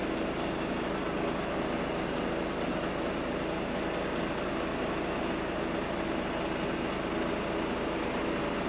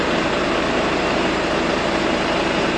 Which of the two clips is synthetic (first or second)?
second